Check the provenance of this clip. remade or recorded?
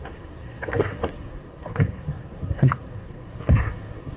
remade